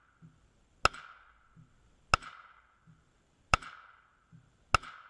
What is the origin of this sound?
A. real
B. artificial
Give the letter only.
A